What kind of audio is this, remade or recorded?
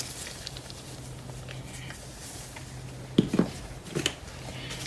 recorded